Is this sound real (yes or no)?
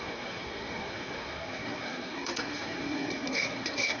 no